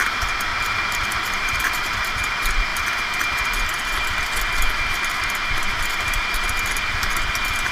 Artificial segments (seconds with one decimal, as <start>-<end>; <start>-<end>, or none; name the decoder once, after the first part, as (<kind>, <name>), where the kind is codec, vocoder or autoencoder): 0.5-2.1 (vocoder, BigVGAN v2)